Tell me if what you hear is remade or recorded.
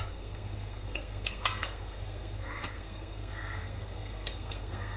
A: remade